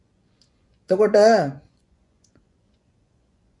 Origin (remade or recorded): remade